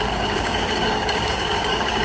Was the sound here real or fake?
fake